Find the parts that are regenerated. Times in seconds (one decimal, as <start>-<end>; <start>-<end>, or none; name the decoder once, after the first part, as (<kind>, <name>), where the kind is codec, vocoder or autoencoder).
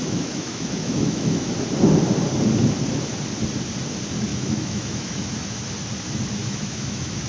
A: 0.0-1.5 (autoencoder, DAC-VAE); 4.3-5.7; 6.4-7.3